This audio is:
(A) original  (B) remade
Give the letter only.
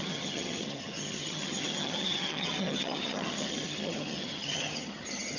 B